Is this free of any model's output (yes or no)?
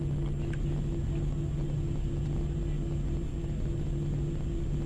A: yes